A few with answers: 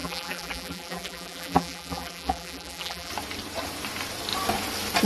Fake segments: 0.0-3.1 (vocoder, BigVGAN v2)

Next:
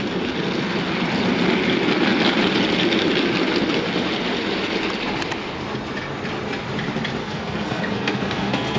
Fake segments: 7.2-8.8 (codec, SNAC)

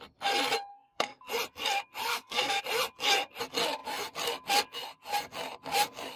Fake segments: 0.7-1.3 (codec, SNAC); 2.1-2.6

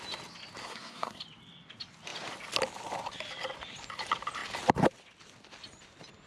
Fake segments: 0.6-1.2 (codec, SNAC)

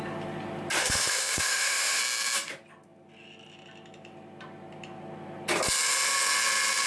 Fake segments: 0.8-2.0 (autoencoder, DAC-VAE)

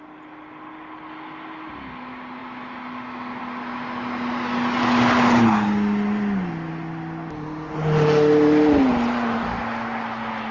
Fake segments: none

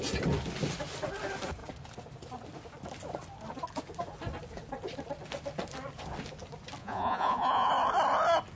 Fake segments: 6.8-7.7 (vocoder, Vocos)

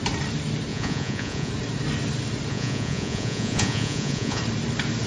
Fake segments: 0.7-1.5 (vocoder, Vocos); 2.5-4.4